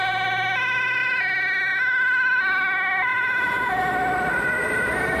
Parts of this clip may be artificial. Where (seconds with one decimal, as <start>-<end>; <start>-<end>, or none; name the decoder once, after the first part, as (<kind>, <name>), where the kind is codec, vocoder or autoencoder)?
3.1-3.8 (vocoder, Vocos)